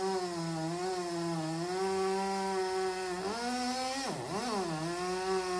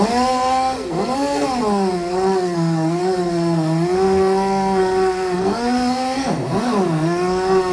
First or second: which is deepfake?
second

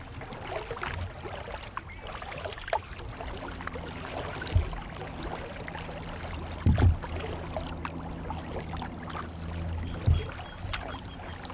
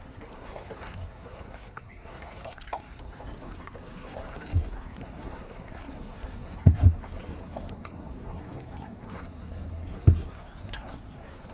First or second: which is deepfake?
second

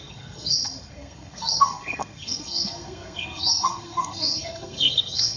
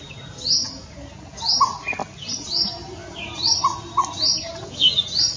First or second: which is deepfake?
first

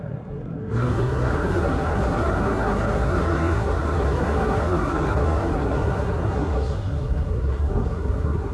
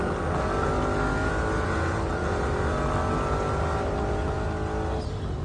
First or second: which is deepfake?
first